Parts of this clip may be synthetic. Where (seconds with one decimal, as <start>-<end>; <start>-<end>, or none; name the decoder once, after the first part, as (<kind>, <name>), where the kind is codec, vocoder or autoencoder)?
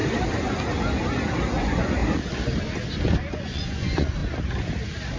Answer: 1.6-2.0 (vocoder, Vocos); 3.1-4.2